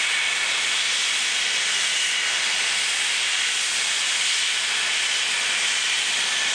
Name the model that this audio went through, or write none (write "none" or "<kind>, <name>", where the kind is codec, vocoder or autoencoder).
none